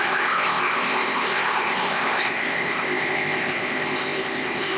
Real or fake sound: fake